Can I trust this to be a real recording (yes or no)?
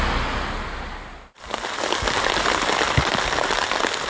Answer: yes